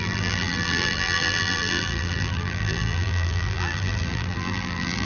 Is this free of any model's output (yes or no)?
no